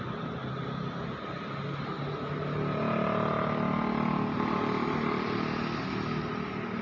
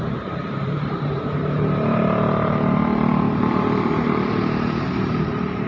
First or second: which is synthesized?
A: second